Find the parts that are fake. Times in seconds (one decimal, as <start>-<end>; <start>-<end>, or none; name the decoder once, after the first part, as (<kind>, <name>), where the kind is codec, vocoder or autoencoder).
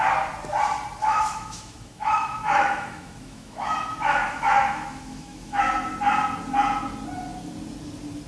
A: 1.0-5.7 (autoencoder, DAC-VAE)